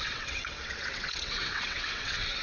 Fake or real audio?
fake